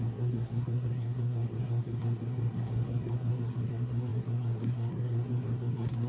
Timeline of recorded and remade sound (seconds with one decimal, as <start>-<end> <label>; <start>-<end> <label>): 0.0-6.1 remade